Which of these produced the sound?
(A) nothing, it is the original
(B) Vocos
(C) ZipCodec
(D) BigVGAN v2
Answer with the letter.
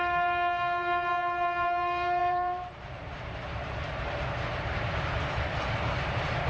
D